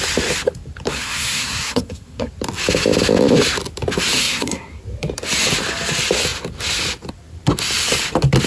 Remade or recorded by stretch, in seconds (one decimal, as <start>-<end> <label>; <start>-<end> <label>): 0.0-0.9 recorded; 0.9-2.3 remade; 2.3-4.2 recorded; 4.2-4.8 remade; 4.8-8.5 recorded